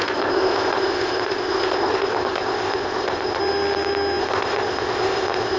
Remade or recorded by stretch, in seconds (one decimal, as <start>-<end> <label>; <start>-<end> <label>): 0.0-3.4 remade; 3.4-4.2 recorded; 4.2-5.6 remade